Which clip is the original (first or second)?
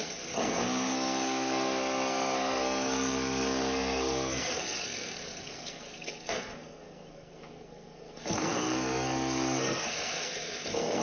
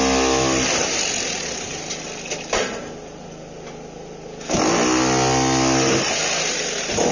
second